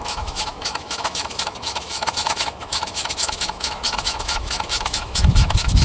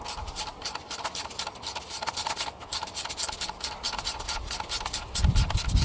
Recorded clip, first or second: second